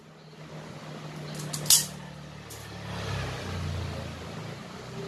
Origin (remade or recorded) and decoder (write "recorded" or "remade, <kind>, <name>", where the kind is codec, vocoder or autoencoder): recorded